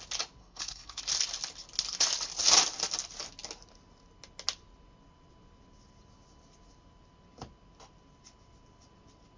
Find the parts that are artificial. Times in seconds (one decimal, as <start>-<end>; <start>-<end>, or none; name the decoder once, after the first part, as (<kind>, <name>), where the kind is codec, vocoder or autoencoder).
0.4-1.0 (codec, SNAC)